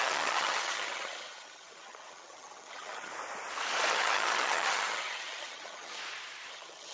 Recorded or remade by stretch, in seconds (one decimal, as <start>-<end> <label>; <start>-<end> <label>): 0.0-3.1 remade; 3.1-3.9 recorded; 3.9-6.0 remade; 6.0-6.5 recorded; 6.5-6.9 remade